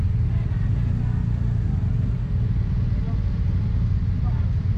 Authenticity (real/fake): real